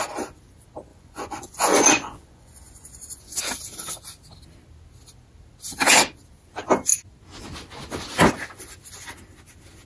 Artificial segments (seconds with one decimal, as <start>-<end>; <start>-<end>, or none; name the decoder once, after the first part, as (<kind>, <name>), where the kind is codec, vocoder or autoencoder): 0.9-3.4 (vocoder, Vocos)